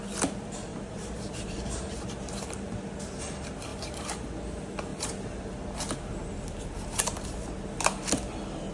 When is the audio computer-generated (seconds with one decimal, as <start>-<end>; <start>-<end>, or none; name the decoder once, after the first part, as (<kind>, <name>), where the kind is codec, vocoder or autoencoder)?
0.7-2.9 (vocoder, BigVGAN v2); 3.7-4.3; 4.9-5.5